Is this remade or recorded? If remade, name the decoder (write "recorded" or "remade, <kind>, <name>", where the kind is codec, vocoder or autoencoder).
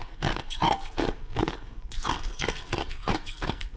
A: remade, codec, SNAC